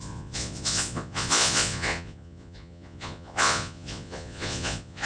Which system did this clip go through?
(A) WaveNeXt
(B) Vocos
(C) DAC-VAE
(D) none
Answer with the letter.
B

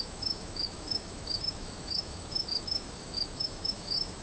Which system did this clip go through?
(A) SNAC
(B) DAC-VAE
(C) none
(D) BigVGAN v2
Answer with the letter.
B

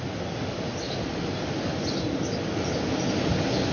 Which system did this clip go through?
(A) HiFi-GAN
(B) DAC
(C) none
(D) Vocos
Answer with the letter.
C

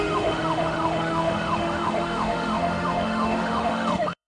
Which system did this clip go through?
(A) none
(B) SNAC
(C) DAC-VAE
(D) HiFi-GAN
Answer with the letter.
C